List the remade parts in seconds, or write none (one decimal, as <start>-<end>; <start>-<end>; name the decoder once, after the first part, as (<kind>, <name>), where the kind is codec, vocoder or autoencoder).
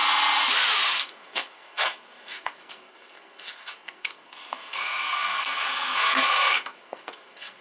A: 1.0-7.6 (codec, SNAC)